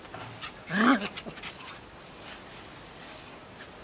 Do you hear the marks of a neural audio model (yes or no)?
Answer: no